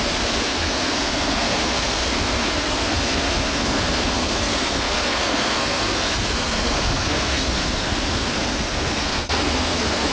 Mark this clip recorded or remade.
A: remade